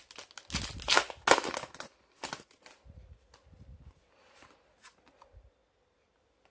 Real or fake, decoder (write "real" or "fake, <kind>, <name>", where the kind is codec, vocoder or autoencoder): real